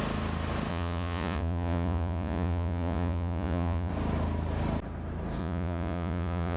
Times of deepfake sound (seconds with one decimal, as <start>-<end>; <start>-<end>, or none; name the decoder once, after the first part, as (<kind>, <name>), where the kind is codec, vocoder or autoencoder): 0.7-3.9 (vocoder, Vocos); 5.4-6.6